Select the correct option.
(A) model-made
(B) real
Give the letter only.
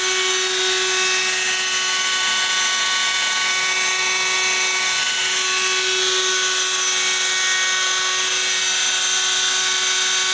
B